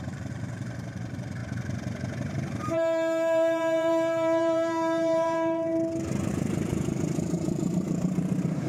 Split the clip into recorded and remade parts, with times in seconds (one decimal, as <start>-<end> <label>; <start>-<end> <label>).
0.0-1.4 remade; 1.4-2.6 recorded; 2.6-5.7 remade; 5.7-6.3 recorded; 6.3-8.7 remade